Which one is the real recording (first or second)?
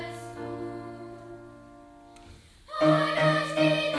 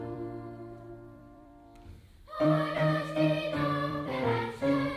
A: first